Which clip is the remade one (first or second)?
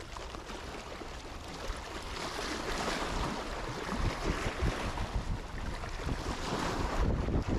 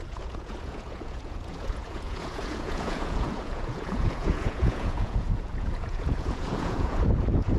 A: second